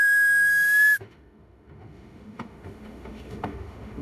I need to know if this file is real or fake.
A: fake